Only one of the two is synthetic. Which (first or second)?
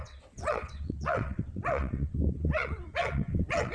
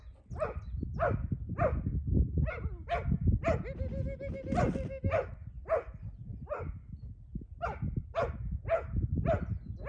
first